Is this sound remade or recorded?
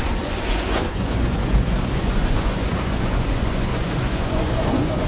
remade